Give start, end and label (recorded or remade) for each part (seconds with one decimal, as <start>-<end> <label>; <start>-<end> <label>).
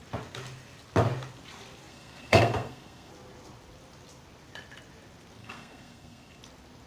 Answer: 0.0-1.9 recorded; 1.9-3.1 remade; 3.1-5.4 recorded; 5.4-6.4 remade; 6.4-6.9 recorded